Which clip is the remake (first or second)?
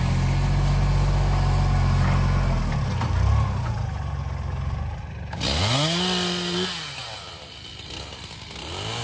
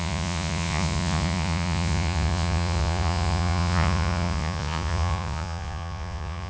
second